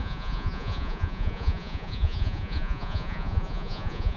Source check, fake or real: fake